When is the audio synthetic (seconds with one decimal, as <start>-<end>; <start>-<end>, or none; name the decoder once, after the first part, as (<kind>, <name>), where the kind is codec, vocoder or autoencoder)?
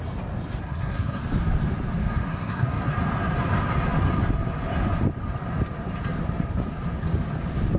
0.6-1.2 (codec, SNAC); 2.0-2.9